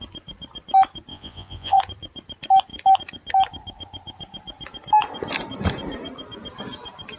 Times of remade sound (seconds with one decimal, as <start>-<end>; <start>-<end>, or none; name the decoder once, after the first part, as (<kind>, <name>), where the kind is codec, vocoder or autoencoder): 1.1-1.8 (vocoder, Vocos)